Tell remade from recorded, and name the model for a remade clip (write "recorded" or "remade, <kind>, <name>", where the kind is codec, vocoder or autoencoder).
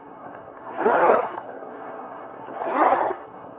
remade, codec, SNAC